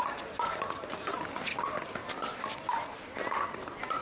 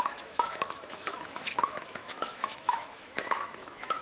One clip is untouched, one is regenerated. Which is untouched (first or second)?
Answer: first